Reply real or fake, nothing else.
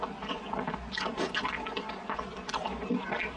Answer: real